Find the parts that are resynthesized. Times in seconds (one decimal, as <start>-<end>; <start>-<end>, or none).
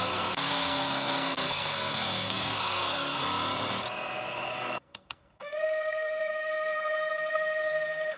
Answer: 0.0-3.2; 4.2-8.2